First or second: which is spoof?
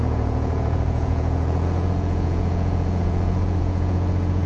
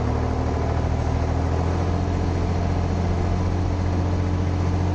first